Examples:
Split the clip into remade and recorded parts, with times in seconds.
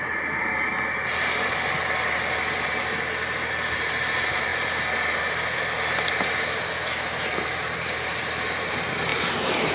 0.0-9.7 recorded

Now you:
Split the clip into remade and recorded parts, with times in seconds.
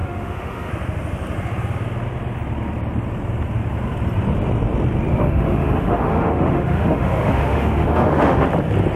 0.0-0.7 remade; 0.7-5.1 recorded; 5.1-8.5 remade; 8.5-9.0 recorded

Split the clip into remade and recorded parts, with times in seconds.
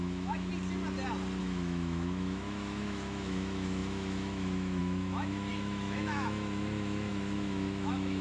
0.0-0.5 remade; 0.5-1.4 recorded; 1.4-8.2 remade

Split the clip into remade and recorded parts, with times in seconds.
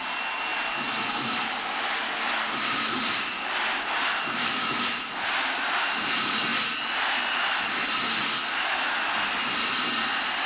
0.0-4.4 recorded; 4.4-5.0 remade; 5.0-10.5 recorded